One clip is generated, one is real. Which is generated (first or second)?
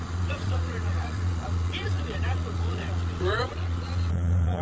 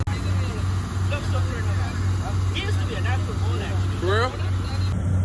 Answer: first